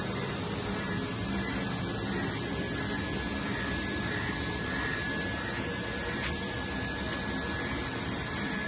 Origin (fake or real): real